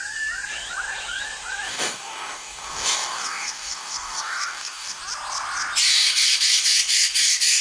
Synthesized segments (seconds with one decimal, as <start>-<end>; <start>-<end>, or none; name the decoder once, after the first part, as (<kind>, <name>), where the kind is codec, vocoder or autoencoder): 1.7-5.0 (codec, DAC); 5.9-7.6